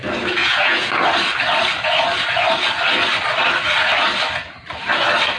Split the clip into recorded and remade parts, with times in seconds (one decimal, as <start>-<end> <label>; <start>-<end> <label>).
0.0-0.4 recorded; 0.4-0.9 remade; 0.9-5.4 recorded